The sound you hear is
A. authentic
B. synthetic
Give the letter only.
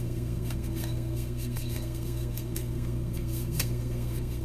B